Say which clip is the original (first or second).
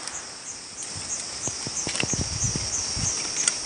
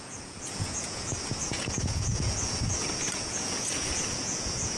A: first